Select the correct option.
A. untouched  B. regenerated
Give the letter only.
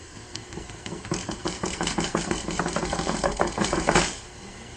B